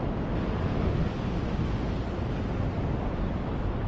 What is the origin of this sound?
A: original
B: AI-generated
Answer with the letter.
A